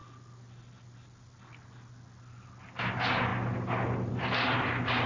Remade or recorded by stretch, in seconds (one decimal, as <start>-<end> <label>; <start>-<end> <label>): 0.0-5.1 recorded